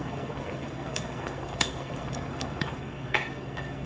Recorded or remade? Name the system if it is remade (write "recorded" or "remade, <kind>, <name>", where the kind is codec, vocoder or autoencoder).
remade, codec, SNAC